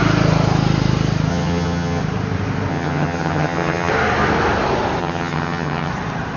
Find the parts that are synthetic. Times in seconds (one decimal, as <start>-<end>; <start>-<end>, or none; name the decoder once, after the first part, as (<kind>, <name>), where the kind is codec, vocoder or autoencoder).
1.3-2.0 (vocoder, HiFi-GAN); 2.7-3.9; 5.0-5.9